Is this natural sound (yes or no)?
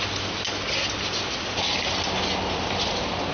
yes